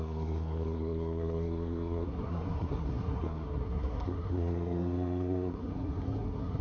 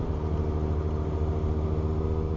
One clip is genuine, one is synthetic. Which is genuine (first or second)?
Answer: second